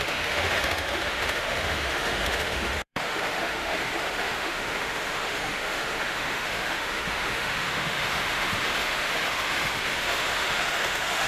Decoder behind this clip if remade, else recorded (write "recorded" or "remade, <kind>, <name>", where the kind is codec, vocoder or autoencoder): remade, autoencoder, DAC-VAE